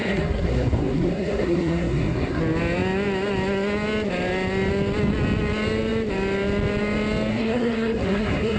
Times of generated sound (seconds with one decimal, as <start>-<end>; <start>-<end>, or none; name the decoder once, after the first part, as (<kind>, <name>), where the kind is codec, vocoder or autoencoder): 0.0-2.4 (codec, SNAC); 7.3-8.6